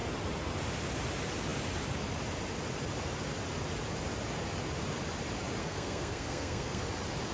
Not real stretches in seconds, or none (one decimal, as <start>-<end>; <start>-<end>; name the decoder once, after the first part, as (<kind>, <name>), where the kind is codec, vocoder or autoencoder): 5.6-6.8 (codec, SNAC)